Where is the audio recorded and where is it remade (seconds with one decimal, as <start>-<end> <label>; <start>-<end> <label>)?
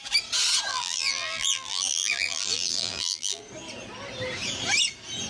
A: 0.0-0.7 recorded; 0.7-3.4 remade; 3.4-5.3 recorded